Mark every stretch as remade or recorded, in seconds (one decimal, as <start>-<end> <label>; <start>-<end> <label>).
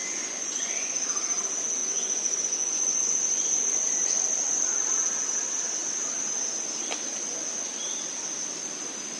0.0-0.9 remade; 0.9-1.8 recorded; 1.8-3.9 remade; 3.9-9.2 recorded